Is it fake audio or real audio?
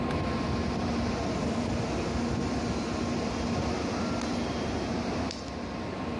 real